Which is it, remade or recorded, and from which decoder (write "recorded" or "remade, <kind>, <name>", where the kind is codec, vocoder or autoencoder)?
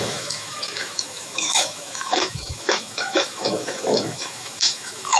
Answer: remade, autoencoder, DAC-VAE